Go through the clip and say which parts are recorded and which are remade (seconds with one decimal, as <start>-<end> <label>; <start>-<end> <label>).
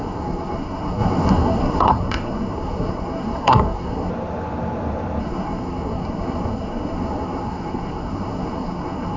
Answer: 0.0-4.1 remade; 4.1-5.2 recorded; 5.2-9.2 remade